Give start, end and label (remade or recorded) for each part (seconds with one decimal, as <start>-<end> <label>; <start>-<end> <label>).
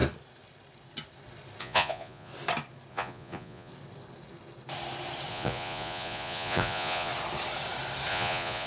0.0-1.6 recorded; 1.6-2.3 remade; 2.3-2.9 recorded; 2.9-3.7 remade; 3.7-5.3 recorded; 5.3-7.1 remade; 7.1-8.1 recorded; 8.1-8.7 remade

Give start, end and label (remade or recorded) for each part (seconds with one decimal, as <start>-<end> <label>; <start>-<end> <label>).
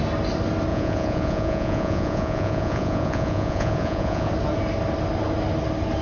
0.0-0.7 recorded; 0.7-4.3 remade; 4.3-6.0 recorded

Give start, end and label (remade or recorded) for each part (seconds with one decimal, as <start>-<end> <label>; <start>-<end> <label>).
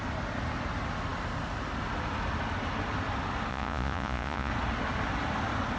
0.0-3.5 recorded; 3.5-4.5 remade; 4.5-5.8 recorded